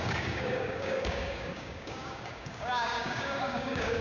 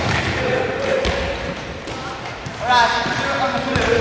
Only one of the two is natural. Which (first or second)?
second